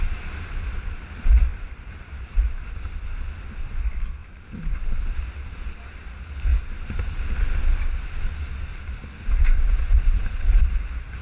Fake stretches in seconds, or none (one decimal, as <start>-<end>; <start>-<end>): 1.5-2.4; 4.2-4.7; 6.5-7.6

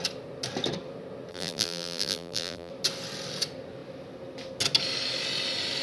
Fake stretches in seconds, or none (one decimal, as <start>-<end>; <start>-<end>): 1.3-2.7

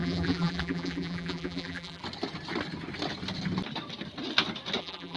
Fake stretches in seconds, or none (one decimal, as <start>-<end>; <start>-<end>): 0.0-2.0; 4.8-5.2

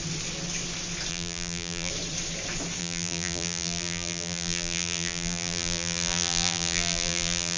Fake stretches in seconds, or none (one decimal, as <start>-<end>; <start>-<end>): 1.1-1.9; 2.8-7.6